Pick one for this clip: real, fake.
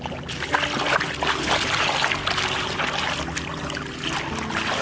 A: real